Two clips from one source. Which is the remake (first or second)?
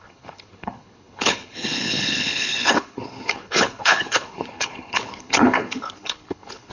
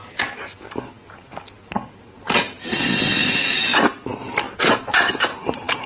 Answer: first